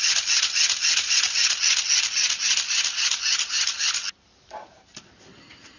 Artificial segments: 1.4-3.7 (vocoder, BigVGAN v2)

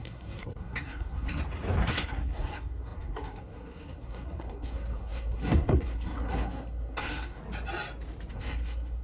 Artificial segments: 0.0-1.4 (codec, SNAC); 1.9-7.4; 8.3-9.0

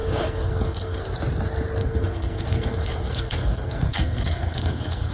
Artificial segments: 0.0-1.0 (codec, SNAC); 1.8-5.1

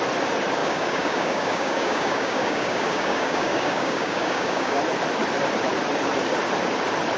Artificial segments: 0.6-4.8 (codec, DAC)

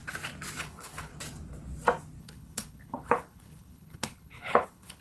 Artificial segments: 0.6-1.1 (codec, HILCodec); 2.2-5.0

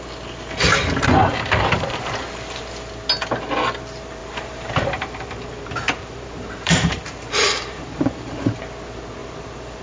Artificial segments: 1.2-2.0 (vocoder, BigVGAN v2); 4.2-8.6; 9.2-9.8

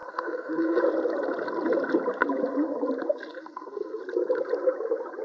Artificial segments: 0.0-0.8 (codec, SNAC); 3.3-4.0